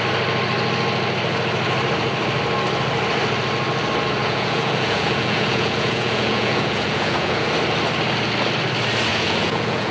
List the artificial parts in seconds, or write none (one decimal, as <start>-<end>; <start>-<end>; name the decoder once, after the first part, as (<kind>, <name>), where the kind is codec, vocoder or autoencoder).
4.2-7.5 (vocoder, Vocos); 9.1-9.9